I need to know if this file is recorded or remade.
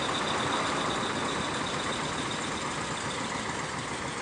recorded